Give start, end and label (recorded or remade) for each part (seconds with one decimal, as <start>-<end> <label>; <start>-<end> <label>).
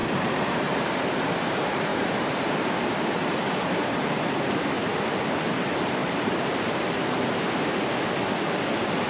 0.0-0.9 remade; 0.9-1.9 recorded; 1.9-2.6 remade; 2.6-6.0 recorded; 6.0-7.8 remade; 7.8-9.1 recorded